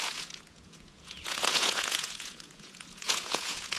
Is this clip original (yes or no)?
no